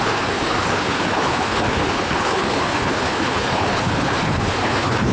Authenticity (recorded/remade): remade